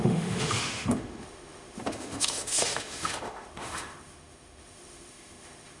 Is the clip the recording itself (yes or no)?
no